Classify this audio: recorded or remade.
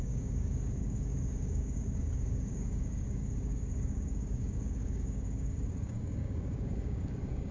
remade